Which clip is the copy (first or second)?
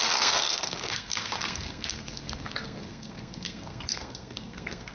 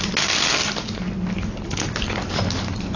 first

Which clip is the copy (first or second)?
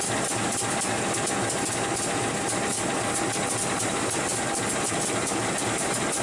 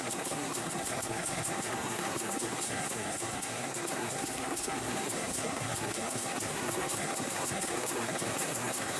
second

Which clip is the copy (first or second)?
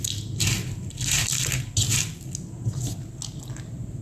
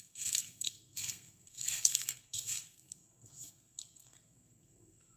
second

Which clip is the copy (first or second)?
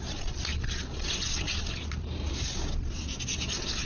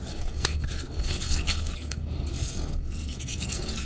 second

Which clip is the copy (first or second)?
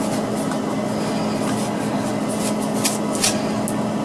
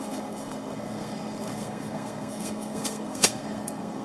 second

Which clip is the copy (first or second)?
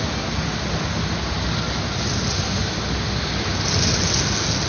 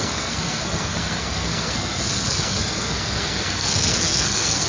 second